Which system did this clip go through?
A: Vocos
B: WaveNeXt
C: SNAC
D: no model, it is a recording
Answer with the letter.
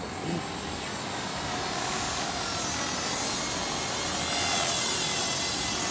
D